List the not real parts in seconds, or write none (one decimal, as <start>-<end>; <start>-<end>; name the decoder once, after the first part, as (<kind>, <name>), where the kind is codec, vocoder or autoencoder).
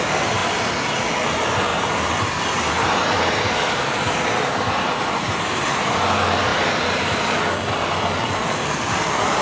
0.4-1.0 (vocoder, BigVGAN v2); 1.7-5.9; 6.5-7.4